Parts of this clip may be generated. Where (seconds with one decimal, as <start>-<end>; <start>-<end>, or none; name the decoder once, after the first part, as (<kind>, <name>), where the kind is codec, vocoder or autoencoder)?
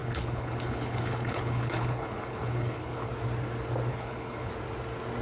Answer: 0.0-3.1 (codec, HILCodec); 3.9-4.5